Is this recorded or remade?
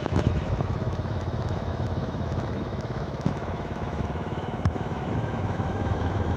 remade